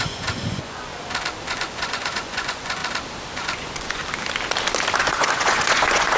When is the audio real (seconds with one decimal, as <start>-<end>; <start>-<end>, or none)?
0.9-1.5; 2.8-3.4; 4.0-5.0